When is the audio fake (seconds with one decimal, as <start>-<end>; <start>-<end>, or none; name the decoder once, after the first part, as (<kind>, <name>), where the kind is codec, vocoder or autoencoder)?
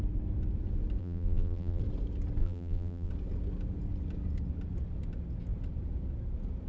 1.0-1.8 (vocoder, BigVGAN v2); 2.4-3.1